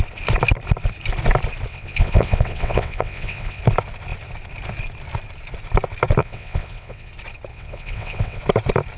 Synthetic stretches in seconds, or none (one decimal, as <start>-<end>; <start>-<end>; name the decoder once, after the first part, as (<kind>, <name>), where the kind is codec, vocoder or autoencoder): 1.7-3.6 (vocoder, WaveNeXt); 6.2-7.1; 7.5-8.4